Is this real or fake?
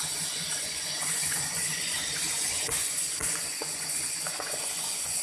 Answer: fake